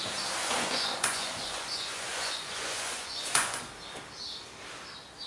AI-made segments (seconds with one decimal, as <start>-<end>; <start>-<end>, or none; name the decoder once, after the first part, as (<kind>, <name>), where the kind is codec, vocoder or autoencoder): 0.4-3.6 (vocoder, Vocos)